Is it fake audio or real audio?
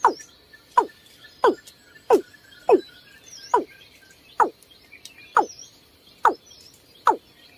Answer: real